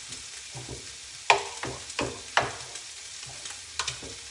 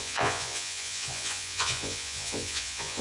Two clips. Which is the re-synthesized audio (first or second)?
second